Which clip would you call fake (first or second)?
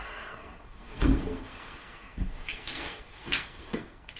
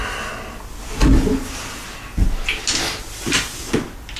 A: first